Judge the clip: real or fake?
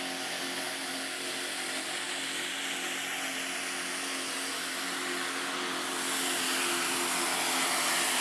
real